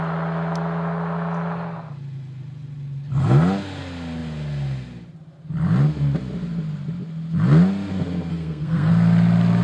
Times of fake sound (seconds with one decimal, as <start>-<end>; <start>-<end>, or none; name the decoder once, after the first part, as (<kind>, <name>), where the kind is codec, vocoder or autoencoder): 8.3-8.9 (codec, SNAC)